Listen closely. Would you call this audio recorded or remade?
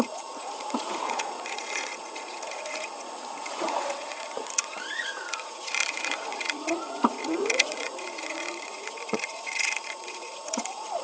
remade